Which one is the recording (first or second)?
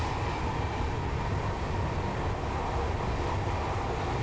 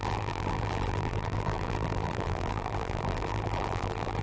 first